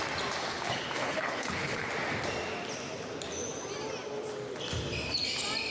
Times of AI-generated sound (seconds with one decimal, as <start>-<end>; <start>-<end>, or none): 0.4-1.9